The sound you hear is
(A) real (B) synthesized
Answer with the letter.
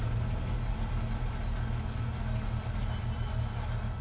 A